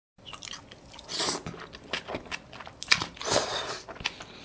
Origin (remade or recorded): recorded